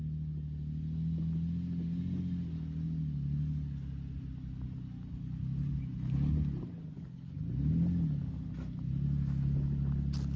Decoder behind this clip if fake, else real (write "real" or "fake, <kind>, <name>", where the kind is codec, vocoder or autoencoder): real